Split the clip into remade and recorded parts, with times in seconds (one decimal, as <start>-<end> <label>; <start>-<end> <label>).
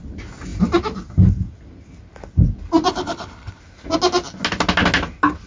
0.0-2.9 recorded; 2.9-3.6 remade; 3.6-5.5 recorded